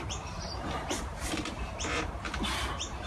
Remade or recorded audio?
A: remade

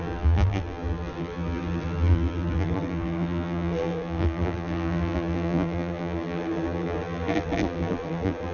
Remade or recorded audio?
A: remade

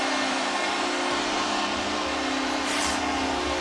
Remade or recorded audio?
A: remade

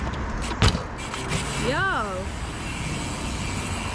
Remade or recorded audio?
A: recorded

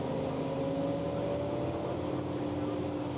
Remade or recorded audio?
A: recorded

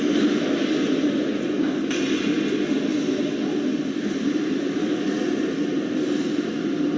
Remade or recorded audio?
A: recorded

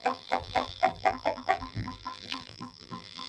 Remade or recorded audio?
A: remade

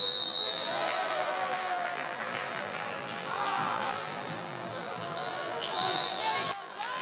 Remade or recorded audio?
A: remade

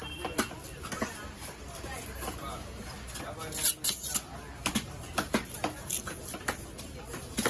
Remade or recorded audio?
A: recorded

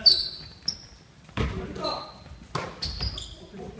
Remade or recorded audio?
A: recorded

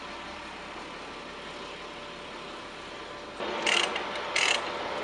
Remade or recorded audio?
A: recorded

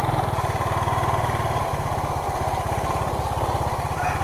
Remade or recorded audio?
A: remade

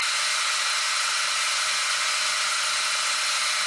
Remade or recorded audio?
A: recorded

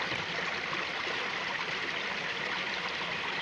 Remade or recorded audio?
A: remade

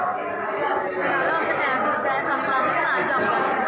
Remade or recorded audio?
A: recorded